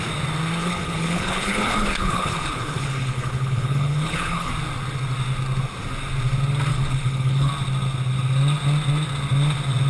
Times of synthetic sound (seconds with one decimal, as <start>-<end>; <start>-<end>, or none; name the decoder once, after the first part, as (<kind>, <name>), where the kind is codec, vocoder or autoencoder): 0.6-4.5 (codec, HILCodec); 6.7-7.5